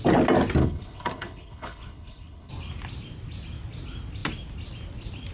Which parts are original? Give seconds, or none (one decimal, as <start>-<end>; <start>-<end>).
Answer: 0.0-0.6; 2.5-5.3